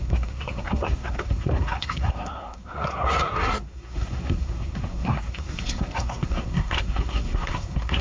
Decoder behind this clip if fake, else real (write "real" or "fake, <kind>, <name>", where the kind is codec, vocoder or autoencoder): fake, codec, SNAC